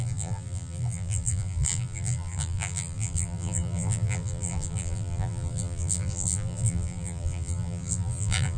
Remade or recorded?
remade